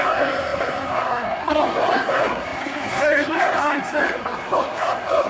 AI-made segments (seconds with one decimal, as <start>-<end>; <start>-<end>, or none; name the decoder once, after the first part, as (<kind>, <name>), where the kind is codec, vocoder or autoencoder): 0.0-5.3 (codec, SNAC)